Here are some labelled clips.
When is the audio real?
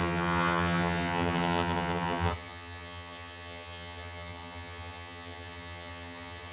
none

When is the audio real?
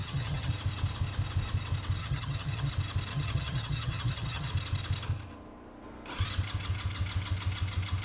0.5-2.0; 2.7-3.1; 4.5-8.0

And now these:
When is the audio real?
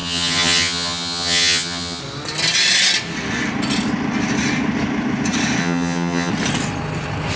2.0-5.6; 6.3-7.4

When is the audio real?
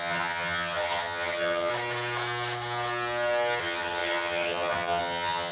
1.7-3.6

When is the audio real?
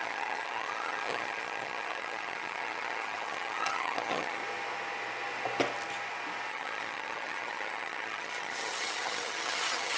4.4-6.5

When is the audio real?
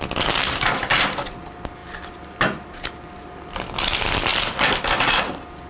0.0-5.7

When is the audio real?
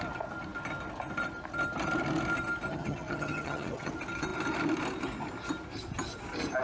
0.0-2.7; 3.9-6.6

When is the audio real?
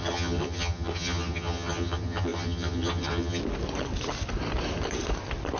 3.4-5.6